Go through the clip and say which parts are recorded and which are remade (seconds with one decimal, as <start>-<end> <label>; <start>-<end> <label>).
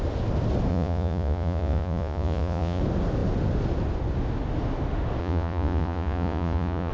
0.0-0.7 recorded; 0.7-2.8 remade; 2.8-5.2 recorded; 5.2-6.9 remade